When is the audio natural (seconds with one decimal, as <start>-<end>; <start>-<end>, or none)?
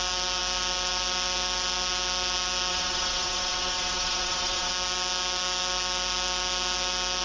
0.0-2.7; 4.7-7.2